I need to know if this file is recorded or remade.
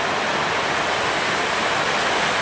recorded